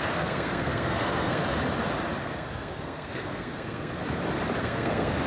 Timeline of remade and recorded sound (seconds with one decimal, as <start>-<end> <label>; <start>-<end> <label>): 0.0-1.4 remade; 1.4-2.2 recorded; 2.2-4.0 remade; 4.0-4.6 recorded; 4.6-5.3 remade